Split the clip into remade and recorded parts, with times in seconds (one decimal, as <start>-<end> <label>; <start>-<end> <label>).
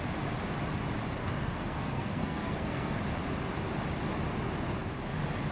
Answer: 0.0-1.2 recorded; 1.2-3.0 remade; 3.0-5.5 recorded